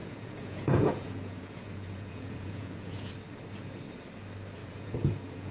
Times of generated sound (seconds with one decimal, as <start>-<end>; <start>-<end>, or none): 0.0-3.1; 4.6-5.5